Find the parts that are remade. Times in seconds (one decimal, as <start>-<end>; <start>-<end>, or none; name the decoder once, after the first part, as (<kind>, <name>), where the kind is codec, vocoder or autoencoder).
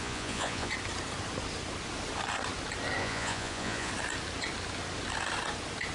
0.0-0.7 (vocoder, Vocos); 3.0-3.9